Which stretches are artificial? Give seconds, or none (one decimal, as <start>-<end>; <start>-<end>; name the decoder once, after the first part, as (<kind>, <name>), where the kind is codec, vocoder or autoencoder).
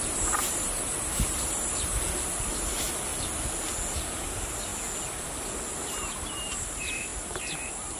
0.0-1.9 (vocoder, BigVGAN v2); 2.4-3.1; 3.9-4.7; 5.7-8.0